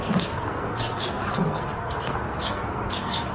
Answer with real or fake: fake